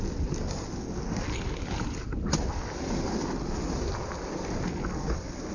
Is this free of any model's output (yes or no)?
yes